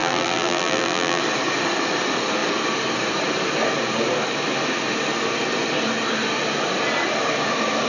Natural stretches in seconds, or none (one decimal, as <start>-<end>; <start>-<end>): 1.2-7.9